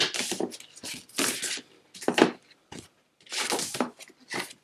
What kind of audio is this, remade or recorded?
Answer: recorded